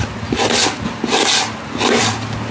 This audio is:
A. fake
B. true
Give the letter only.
B